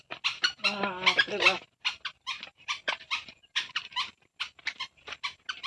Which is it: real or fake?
real